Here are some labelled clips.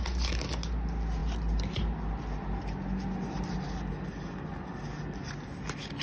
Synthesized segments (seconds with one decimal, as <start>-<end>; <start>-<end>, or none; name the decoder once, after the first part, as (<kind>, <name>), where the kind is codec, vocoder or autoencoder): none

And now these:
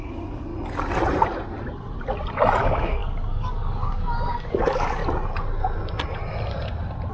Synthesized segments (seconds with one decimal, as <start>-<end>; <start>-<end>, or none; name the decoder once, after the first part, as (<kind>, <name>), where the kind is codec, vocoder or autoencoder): 0.0-0.5 (codec, DAC); 2.6-5.0

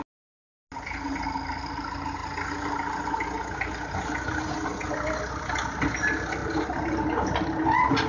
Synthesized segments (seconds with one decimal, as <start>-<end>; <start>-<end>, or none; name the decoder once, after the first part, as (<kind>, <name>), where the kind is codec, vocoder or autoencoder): none